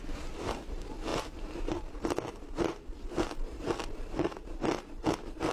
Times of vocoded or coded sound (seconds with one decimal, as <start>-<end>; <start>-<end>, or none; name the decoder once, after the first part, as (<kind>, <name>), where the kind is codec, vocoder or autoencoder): none